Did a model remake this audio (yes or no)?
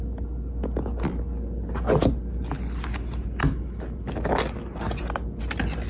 no